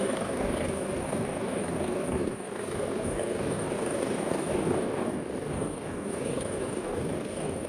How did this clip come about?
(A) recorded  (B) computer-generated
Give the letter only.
B